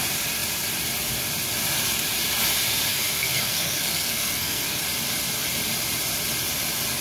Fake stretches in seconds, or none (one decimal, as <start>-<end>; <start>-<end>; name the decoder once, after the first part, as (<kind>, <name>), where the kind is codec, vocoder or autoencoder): 2.9-4.8 (codec, SNAC)